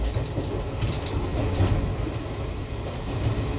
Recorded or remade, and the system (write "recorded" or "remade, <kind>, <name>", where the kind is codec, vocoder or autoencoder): recorded